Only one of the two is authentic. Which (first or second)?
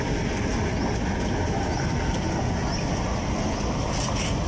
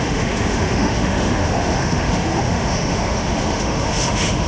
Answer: first